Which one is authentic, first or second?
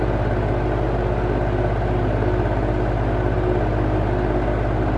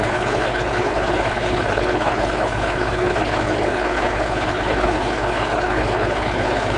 first